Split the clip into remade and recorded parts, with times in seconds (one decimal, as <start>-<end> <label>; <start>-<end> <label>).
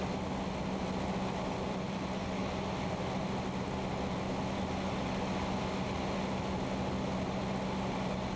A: 0.0-8.4 recorded